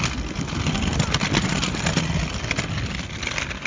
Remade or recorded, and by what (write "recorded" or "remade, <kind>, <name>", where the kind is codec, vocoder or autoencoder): recorded